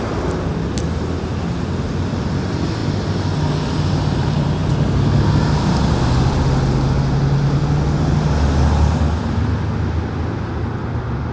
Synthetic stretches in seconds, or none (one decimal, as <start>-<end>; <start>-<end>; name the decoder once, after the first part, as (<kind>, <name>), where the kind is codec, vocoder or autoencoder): none